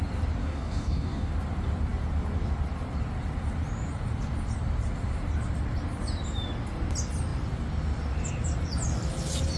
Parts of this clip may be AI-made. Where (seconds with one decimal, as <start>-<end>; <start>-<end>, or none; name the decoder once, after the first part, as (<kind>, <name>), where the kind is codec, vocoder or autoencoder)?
0.4-1.3 (codec, DAC)